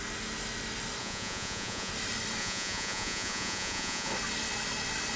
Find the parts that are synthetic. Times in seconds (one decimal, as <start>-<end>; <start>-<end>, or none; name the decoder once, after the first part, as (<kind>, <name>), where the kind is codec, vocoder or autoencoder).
1.0-1.9 (vocoder, Vocos); 2.4-4.1